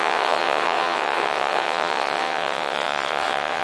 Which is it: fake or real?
fake